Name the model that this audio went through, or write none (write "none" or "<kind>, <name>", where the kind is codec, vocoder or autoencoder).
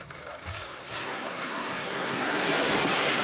codec, SNAC